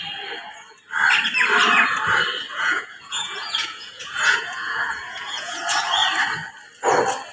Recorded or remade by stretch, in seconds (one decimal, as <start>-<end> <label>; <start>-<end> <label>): 0.0-2.5 recorded; 2.5-5.6 remade; 5.6-7.3 recorded